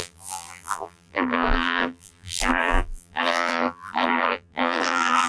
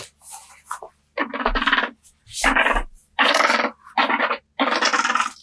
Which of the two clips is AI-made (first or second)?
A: first